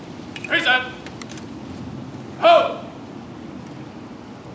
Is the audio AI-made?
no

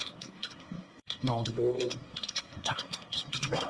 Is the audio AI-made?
yes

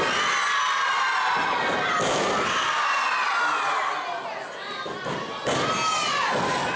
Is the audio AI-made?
no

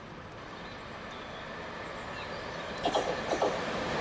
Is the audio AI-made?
no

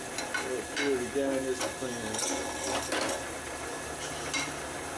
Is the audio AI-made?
no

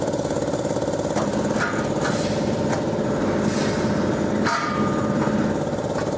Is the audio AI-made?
no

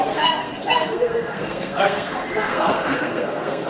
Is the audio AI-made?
yes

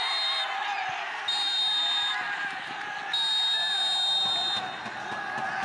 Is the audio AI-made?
no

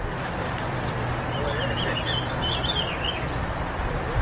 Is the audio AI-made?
no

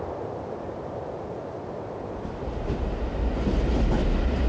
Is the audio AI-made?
no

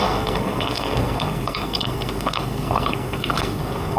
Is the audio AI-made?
yes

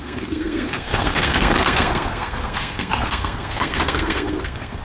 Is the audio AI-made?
yes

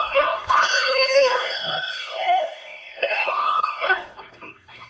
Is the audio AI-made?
yes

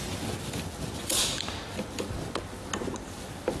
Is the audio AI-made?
no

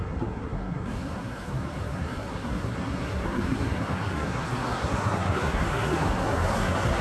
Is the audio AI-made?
yes